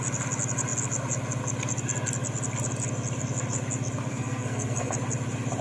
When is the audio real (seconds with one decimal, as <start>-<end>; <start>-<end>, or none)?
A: 0.0-4.1; 4.9-5.6